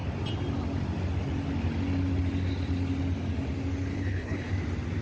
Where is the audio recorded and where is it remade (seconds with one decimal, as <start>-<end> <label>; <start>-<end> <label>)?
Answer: 0.0-3.9 recorded; 3.9-4.5 remade; 4.5-5.0 recorded